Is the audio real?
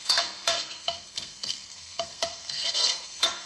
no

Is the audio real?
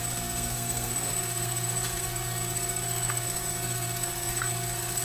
no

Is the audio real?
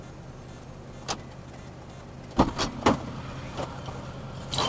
yes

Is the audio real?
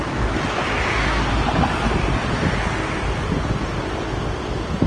yes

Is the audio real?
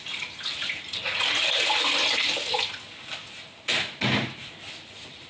yes